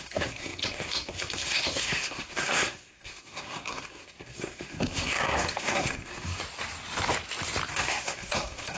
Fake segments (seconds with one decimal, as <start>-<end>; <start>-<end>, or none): 0.0-6.4; 7.7-8.8